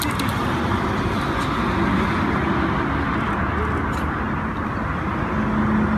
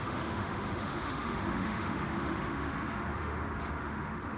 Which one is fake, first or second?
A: second